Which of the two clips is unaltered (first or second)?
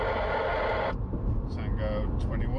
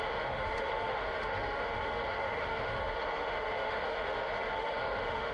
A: first